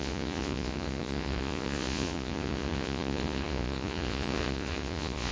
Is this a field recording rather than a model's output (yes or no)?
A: no